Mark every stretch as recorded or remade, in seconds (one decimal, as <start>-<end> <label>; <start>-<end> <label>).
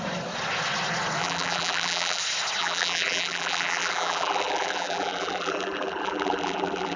0.0-1.2 recorded; 1.2-2.2 remade; 2.2-2.6 recorded; 2.6-7.0 remade